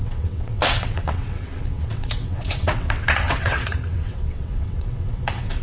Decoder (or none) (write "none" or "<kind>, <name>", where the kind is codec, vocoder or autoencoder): vocoder, WaveNeXt